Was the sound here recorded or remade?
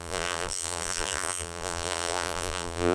remade